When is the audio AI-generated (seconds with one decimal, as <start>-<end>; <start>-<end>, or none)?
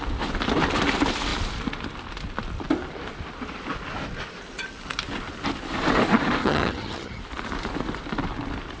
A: 6.4-7.2